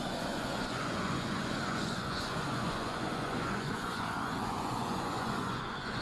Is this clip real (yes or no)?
no